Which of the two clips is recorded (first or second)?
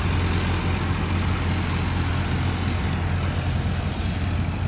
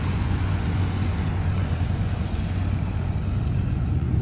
first